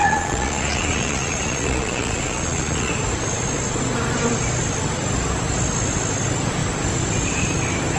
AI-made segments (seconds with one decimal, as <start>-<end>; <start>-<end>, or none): 0.0-2.9